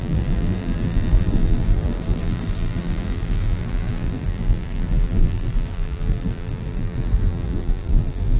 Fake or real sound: fake